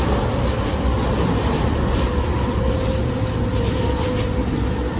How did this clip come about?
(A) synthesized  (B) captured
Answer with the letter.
B